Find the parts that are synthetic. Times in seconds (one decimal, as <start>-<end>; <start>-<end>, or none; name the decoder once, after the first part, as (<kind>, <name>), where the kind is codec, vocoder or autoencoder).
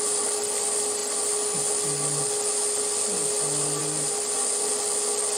none